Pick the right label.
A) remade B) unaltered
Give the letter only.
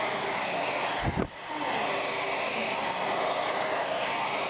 B